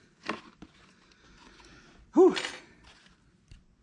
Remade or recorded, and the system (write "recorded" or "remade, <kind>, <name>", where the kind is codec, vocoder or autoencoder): recorded